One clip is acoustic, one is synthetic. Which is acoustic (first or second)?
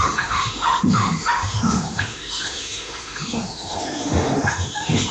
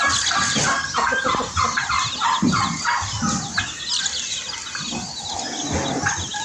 second